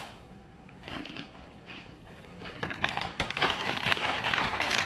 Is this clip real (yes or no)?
no